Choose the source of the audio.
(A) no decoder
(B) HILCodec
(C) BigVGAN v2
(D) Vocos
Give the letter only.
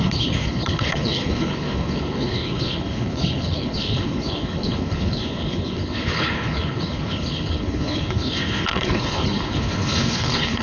B